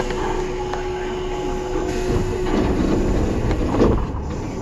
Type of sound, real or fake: real